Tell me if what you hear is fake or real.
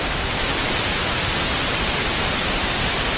fake